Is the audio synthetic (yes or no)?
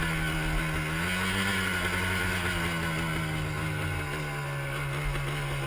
no